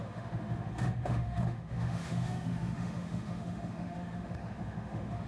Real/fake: fake